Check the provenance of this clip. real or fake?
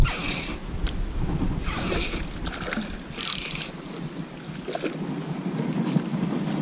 real